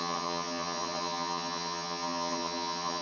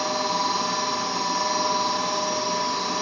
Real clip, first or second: second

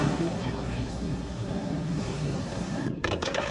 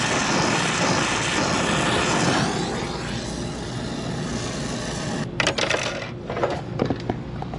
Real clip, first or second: second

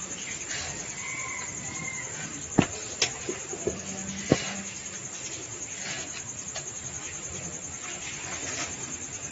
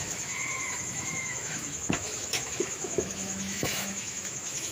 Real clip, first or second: first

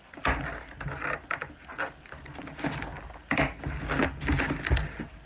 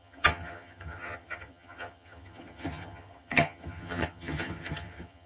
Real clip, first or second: first